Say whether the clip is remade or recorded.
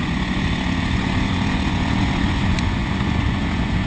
remade